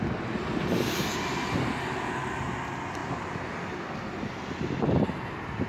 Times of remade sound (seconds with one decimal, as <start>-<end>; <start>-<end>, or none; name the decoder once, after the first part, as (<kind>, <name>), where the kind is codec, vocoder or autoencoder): none